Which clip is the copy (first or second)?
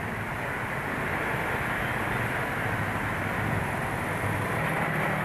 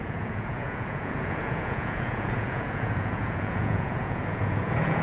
second